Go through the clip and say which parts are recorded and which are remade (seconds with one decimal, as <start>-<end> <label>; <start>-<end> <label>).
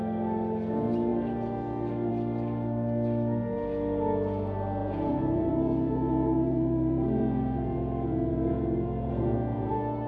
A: 0.0-4.8 recorded; 4.8-9.7 remade; 9.7-10.1 recorded